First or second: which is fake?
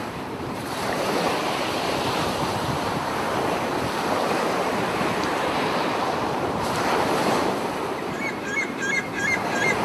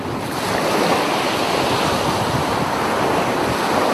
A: first